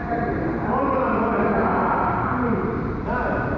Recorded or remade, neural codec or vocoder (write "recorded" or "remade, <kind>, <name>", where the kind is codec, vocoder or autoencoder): recorded